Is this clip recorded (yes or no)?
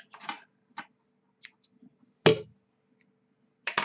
yes